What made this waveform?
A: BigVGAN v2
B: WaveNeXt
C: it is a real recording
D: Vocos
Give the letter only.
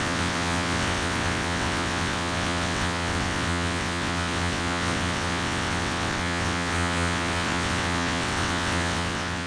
B